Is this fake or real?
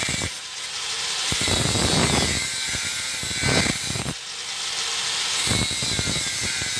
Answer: real